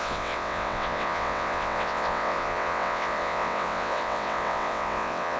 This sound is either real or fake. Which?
fake